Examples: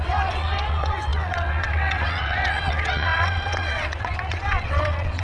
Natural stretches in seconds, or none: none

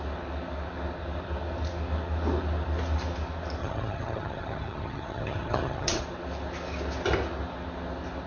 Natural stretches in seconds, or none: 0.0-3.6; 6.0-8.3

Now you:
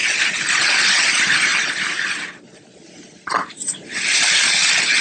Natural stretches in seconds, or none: 0.0-5.0

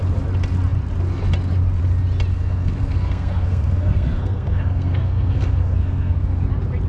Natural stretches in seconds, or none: 0.0-2.3; 6.4-6.9